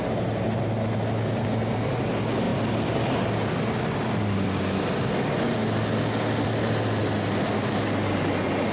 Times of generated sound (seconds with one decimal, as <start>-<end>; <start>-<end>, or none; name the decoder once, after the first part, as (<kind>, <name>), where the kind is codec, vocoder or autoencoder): none